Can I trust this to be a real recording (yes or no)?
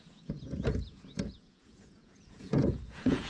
no